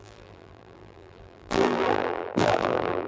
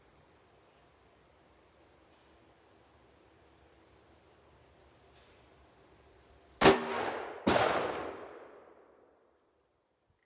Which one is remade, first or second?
first